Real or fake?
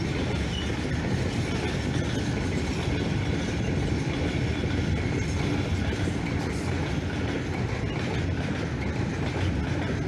real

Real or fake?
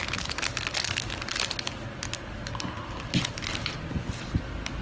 real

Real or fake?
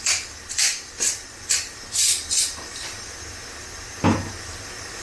fake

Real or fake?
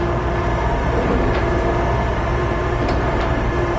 fake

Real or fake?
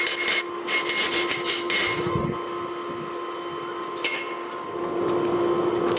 real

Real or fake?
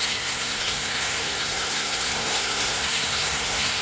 fake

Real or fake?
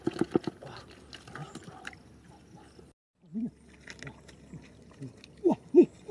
real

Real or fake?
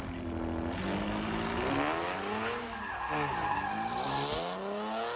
real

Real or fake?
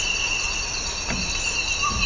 real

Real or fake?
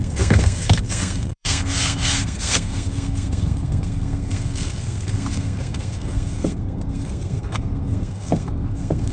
fake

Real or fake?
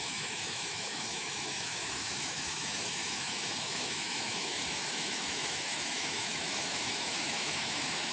fake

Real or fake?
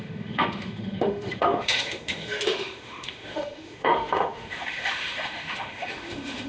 fake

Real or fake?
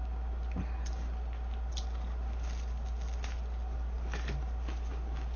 real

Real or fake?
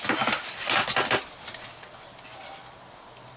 real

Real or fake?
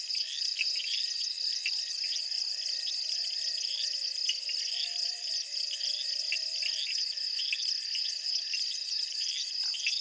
real